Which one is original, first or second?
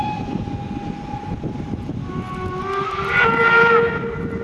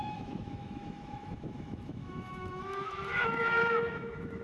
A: first